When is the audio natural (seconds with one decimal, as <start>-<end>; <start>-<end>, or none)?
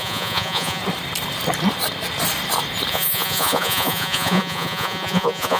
0.8-2.9